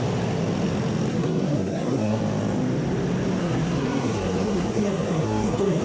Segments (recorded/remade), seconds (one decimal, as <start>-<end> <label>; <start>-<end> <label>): 0.0-1.1 recorded; 1.1-2.2 remade; 2.2-3.4 recorded; 3.4-5.8 remade